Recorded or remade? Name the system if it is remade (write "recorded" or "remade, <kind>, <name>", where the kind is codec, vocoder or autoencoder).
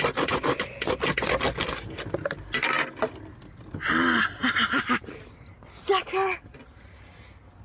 recorded